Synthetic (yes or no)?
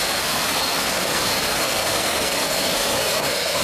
yes